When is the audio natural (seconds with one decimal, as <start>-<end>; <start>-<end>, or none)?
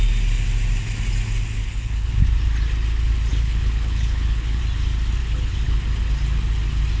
0.0-1.6; 2.1-3.3; 4.6-5.2; 5.8-7.0